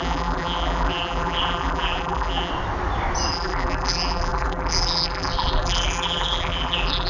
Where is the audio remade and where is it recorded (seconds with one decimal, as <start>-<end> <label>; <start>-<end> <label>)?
0.0-2.5 remade; 2.5-3.3 recorded; 3.3-7.1 remade